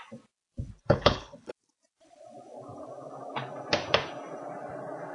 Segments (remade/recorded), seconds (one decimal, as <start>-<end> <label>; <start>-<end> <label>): 0.0-0.8 recorded; 0.8-1.5 remade; 1.5-5.1 recorded